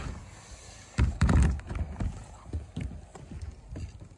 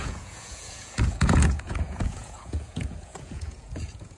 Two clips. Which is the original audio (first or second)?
first